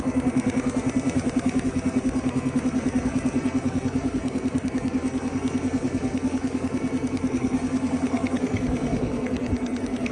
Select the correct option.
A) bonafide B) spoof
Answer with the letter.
B